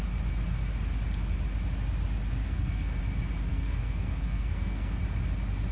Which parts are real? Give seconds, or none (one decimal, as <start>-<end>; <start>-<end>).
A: 0.0-2.4; 3.0-3.5; 5.0-5.7